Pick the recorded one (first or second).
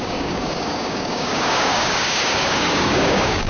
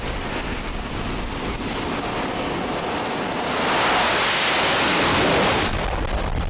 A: second